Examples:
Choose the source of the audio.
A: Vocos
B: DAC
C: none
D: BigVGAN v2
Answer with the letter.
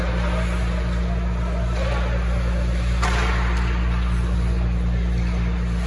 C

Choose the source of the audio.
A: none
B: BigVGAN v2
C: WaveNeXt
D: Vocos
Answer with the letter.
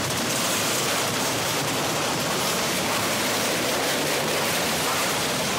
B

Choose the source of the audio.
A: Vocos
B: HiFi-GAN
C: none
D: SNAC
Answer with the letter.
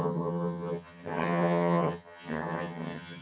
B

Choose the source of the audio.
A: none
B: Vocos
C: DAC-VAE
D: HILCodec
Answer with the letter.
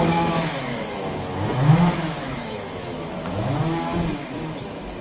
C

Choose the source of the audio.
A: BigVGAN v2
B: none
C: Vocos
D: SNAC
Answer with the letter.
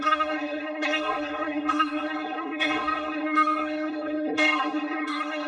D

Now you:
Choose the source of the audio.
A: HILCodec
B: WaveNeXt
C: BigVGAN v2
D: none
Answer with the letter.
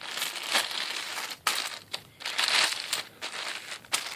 C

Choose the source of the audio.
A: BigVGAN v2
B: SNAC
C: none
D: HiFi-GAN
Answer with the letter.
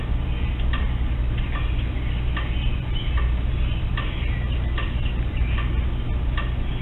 C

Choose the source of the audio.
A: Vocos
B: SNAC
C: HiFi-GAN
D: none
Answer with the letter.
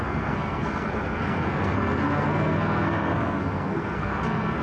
B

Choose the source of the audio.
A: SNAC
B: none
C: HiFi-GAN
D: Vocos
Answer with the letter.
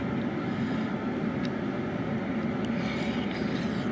B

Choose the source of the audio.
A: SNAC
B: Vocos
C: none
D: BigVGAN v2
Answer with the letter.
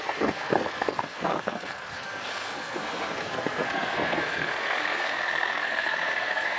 A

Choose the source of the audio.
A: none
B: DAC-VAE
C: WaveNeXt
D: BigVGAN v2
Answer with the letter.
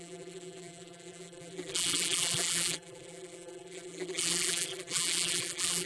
D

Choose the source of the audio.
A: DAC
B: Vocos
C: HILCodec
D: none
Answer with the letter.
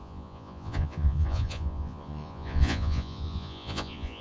B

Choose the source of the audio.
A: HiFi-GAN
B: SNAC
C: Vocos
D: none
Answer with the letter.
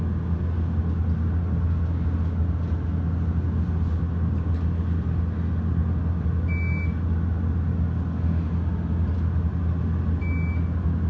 D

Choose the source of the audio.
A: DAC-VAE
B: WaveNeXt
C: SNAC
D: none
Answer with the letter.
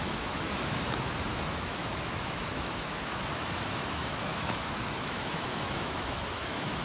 A